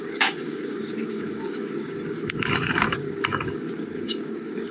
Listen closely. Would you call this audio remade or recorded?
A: remade